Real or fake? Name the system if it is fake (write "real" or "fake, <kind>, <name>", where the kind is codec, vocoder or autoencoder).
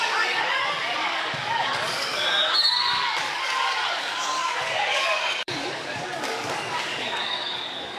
fake, codec, DAC